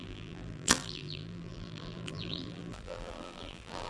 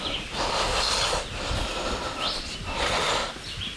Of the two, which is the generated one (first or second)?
first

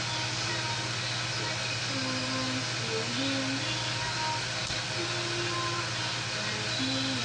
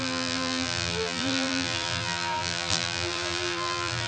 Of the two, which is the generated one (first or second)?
second